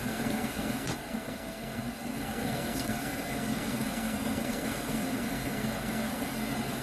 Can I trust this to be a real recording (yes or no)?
no